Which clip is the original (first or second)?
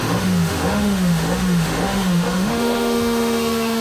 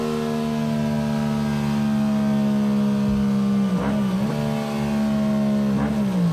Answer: second